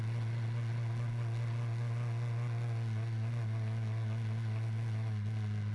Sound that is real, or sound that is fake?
real